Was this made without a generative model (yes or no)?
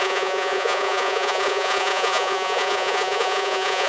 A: no